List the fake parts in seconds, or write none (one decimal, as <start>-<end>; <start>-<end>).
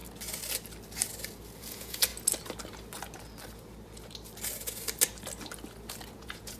1.6-2.1; 6.1-6.6